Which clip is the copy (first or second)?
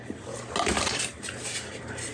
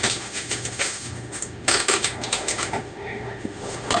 second